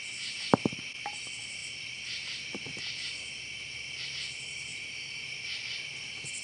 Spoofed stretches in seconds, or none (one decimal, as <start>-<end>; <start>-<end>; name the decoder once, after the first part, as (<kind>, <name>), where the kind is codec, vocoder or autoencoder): 1.6-4.0 (vocoder, BigVGAN v2); 4.7-5.2